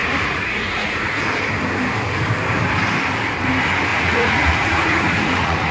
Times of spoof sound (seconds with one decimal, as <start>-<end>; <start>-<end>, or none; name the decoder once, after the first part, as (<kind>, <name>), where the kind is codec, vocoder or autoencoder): 0.0-1.2 (vocoder, Vocos); 3.9-5.7